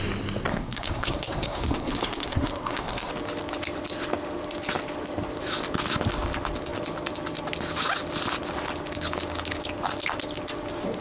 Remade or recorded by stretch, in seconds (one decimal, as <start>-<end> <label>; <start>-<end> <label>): 0.0-0.5 recorded; 0.5-3.1 remade; 3.1-11.0 recorded